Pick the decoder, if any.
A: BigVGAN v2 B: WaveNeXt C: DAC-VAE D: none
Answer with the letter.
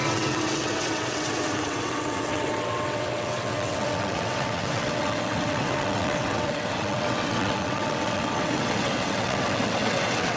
B